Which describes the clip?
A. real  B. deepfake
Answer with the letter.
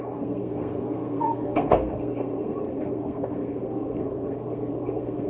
B